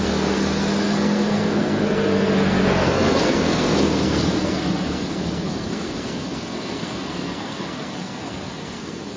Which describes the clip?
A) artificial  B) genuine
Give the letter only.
A